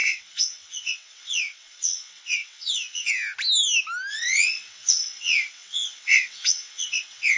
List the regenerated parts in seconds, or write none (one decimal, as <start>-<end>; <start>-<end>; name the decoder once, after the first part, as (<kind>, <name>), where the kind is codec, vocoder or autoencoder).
0.0-3.1 (vocoder, WaveNeXt); 4.1-7.4